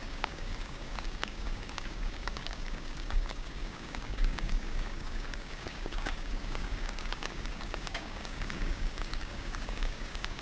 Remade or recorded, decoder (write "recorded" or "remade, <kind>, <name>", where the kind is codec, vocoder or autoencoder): remade, codec, DAC